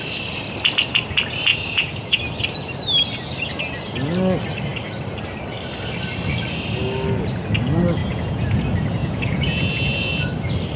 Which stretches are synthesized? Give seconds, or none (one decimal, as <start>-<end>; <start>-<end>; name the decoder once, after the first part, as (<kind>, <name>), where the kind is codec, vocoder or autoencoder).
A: 1.5-2.2 (vocoder, Vocos); 8.0-8.6; 9.0-10.3